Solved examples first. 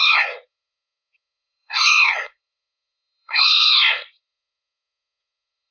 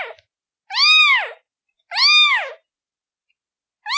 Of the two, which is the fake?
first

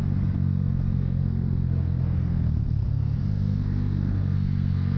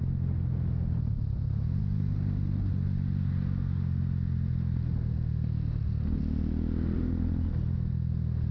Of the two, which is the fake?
first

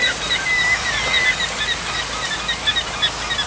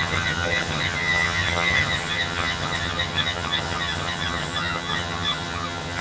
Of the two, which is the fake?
second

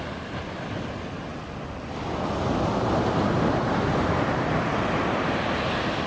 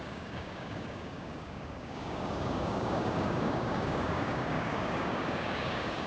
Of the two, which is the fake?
second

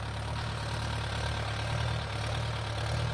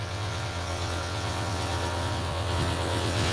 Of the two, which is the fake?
second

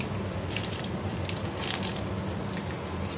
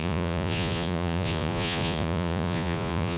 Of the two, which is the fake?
second